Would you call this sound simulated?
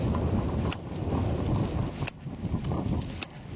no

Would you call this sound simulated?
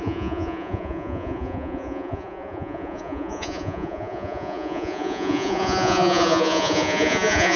yes